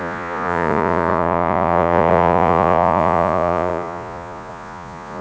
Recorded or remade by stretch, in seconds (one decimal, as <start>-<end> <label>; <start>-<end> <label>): 0.0-5.2 remade